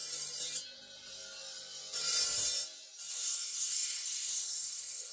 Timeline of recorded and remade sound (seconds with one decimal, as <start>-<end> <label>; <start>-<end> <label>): 0.0-3.1 recorded; 3.1-5.1 remade